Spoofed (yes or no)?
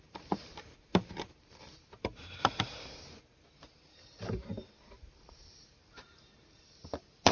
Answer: yes